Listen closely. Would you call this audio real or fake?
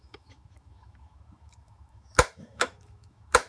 fake